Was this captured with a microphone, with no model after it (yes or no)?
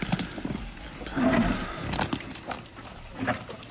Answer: yes